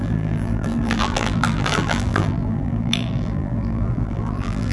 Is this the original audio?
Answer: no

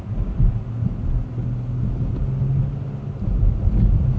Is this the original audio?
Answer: yes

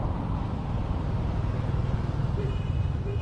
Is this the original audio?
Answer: no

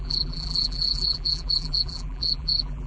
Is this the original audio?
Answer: no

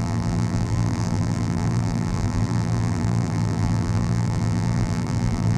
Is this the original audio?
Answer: no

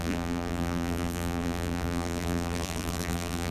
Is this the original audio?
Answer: no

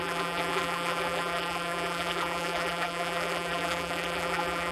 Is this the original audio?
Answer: no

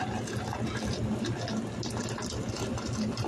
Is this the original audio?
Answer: yes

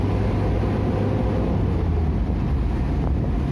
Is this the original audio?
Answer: yes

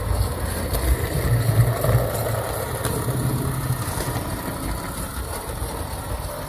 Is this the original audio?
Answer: yes